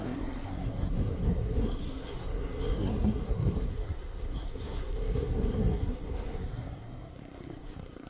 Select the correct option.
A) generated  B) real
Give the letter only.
A